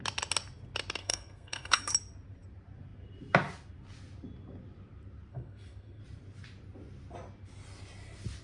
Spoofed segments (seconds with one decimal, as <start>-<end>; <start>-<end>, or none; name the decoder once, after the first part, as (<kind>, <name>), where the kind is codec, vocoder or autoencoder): 1.0-1.9 (codec, SNAC); 5.3-6.0